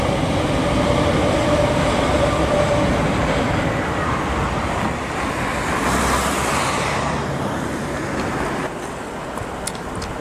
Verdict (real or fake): real